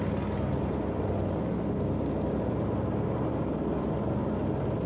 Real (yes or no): yes